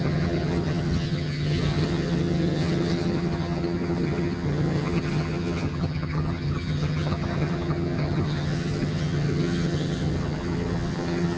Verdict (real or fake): fake